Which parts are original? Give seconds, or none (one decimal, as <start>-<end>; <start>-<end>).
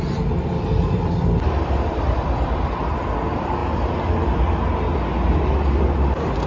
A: 3.6-5.5